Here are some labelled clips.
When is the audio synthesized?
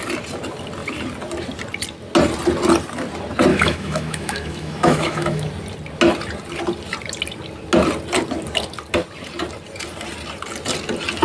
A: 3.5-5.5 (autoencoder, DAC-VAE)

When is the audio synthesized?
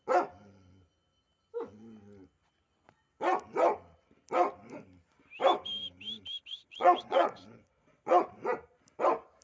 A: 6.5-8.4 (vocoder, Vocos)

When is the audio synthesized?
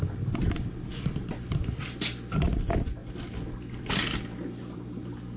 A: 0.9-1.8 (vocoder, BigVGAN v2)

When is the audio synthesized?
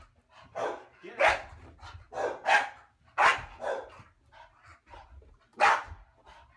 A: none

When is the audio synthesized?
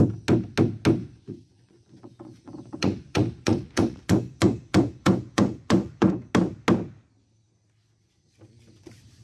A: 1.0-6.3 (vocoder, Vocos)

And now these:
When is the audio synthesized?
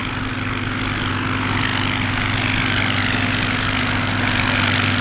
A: none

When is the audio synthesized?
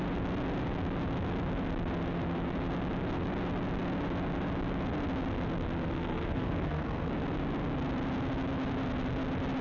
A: 5.9-7.1 (codec, SNAC)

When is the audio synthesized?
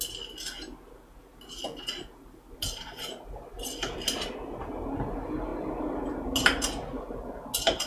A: 1.3-3.4 (vocoder, BigVGAN v2)